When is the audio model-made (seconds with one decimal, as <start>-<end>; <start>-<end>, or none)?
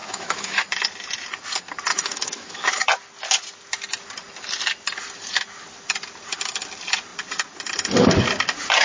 0.0-0.6; 1.9-2.9